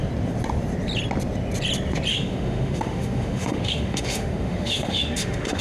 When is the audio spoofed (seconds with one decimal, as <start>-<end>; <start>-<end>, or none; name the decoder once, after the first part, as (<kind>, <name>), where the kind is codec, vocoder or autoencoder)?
2.1-5.6 (autoencoder, DAC-VAE)